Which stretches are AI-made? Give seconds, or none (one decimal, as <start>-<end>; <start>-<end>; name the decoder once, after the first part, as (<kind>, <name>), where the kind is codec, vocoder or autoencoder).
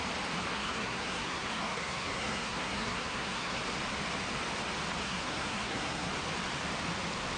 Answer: 0.5-3.6 (codec, SNAC); 5.0-6.1